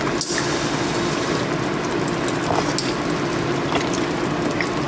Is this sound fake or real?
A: real